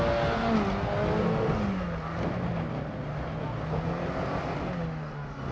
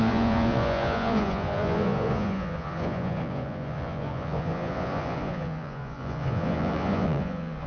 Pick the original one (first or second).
first